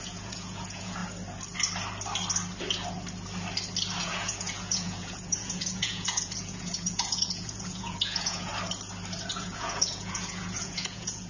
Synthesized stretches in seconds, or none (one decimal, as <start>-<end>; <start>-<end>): 0.0-1.0; 4.0-8.5; 9.3-11.3

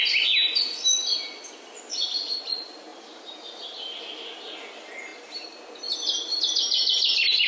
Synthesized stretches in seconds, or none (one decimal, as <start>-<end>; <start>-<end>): 1.9-2.4; 2.9-4.0; 5.1-5.6

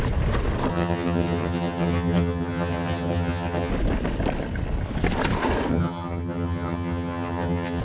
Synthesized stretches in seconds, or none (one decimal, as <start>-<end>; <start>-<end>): 0.7-3.7; 5.7-7.8

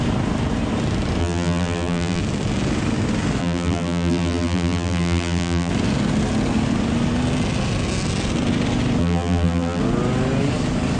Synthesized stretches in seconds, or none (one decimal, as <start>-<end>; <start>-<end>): 1.2-2.2; 3.4-5.7; 9.0-9.8

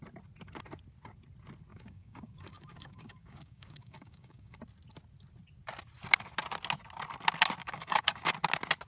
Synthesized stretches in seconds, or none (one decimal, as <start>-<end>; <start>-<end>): 1.7-4.6; 7.6-8.3

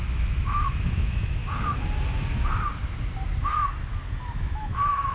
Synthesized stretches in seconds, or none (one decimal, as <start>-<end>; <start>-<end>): 0.0-1.4; 4.4-5.1

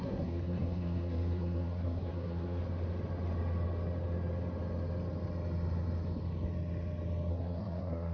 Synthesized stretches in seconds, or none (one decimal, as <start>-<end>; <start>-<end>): 0.0-2.6; 7.3-8.1